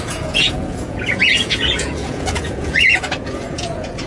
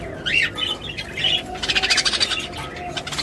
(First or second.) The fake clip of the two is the first